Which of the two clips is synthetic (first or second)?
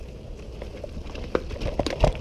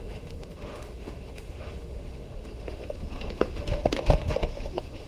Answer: second